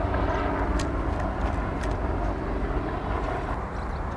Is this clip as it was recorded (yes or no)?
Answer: yes